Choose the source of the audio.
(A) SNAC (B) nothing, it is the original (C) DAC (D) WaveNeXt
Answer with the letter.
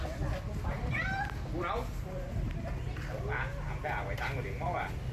B